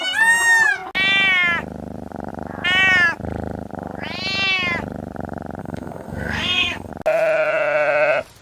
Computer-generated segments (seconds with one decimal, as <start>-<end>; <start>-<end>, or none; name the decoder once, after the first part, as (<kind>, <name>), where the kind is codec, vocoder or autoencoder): 5.6-6.9 (codec, SNAC)